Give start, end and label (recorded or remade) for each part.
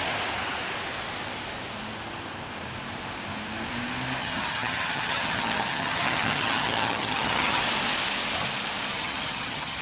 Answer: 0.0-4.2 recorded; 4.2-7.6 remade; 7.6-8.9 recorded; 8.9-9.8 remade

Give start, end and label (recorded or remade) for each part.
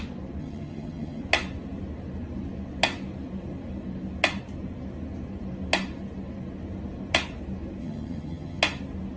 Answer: 0.0-0.4 recorded; 0.4-1.2 remade; 1.2-7.8 recorded; 7.8-8.6 remade; 8.6-9.2 recorded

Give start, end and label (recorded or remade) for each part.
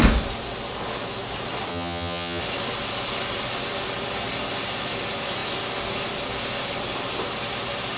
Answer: 0.0-1.7 recorded; 1.7-2.4 remade; 2.4-8.0 recorded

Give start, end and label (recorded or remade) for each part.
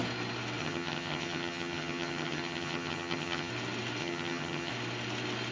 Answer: 0.0-0.6 recorded; 0.6-3.5 remade; 3.5-4.0 recorded; 4.0-4.7 remade; 4.7-5.5 recorded